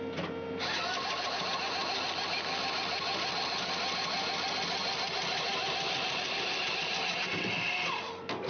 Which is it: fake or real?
real